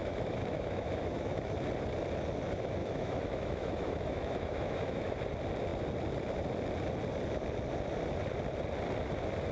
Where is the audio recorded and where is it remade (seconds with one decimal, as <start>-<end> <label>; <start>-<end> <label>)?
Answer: 0.0-1.6 remade; 1.6-2.8 recorded; 2.8-5.2 remade; 5.2-9.5 recorded